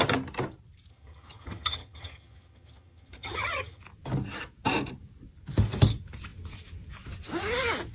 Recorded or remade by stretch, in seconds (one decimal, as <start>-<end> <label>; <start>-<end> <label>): 0.0-0.9 recorded; 0.9-3.8 remade; 3.8-7.9 recorded